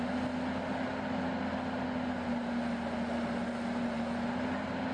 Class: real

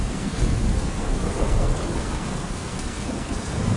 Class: fake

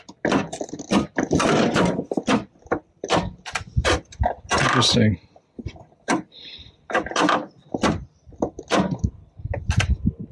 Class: fake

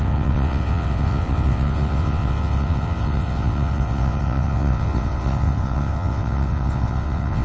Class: fake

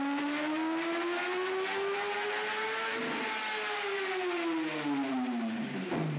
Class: real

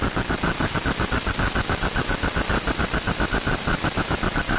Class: real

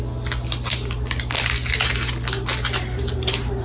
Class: real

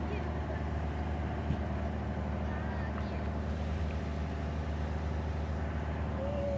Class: real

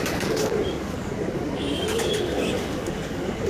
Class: fake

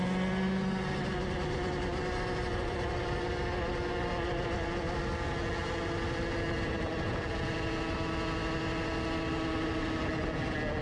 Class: real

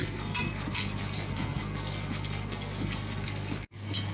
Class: fake